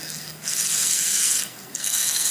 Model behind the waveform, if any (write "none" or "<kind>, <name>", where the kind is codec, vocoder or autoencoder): codec, SNAC